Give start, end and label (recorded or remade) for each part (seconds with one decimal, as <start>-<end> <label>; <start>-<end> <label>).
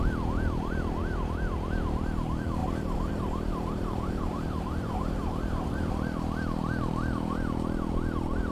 0.0-2.6 recorded; 2.6-5.9 remade; 5.9-8.5 recorded